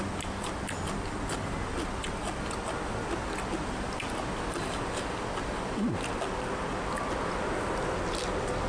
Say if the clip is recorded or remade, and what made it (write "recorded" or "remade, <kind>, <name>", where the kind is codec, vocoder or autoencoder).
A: recorded